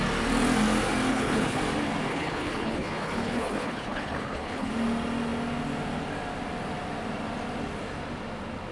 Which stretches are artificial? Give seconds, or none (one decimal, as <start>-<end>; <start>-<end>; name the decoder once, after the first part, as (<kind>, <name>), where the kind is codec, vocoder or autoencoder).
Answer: 1.1-1.6 (codec, HILCodec); 2.1-4.7